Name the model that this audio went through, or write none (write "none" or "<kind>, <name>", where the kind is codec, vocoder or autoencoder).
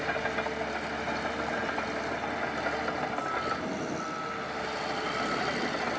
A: none